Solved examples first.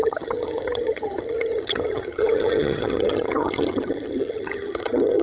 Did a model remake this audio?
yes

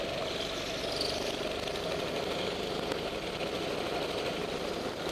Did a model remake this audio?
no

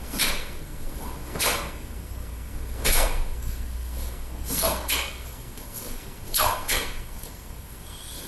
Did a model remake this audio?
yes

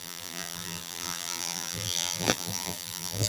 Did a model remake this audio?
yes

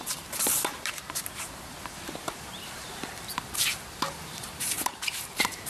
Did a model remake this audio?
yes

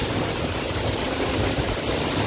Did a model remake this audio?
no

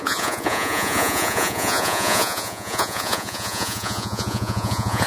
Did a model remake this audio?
yes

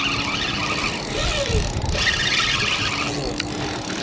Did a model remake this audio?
no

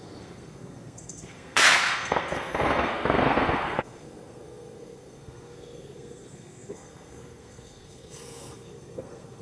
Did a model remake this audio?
yes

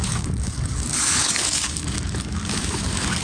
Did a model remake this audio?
yes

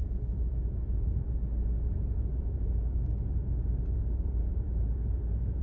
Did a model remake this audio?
yes